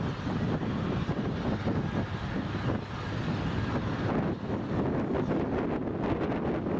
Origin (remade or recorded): recorded